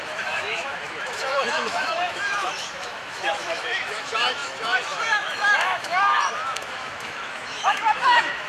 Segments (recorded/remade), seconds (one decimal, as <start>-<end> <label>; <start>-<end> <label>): 0.0-8.5 remade